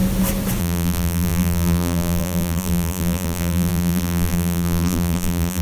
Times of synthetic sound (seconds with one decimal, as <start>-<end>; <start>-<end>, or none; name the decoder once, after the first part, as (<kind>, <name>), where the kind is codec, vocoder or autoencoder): 0.6-5.6 (vocoder, BigVGAN v2)